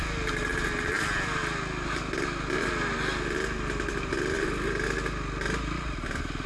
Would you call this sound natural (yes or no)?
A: yes